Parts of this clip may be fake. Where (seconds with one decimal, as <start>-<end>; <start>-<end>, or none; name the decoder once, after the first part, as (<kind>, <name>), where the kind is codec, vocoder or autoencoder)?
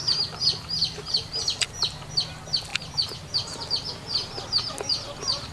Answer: none